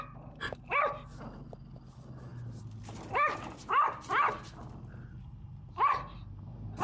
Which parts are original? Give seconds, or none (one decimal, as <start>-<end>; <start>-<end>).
0.0-6.8